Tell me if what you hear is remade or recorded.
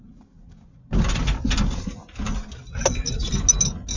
recorded